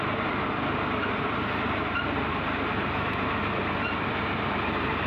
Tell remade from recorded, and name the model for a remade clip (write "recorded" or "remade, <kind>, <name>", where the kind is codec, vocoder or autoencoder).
recorded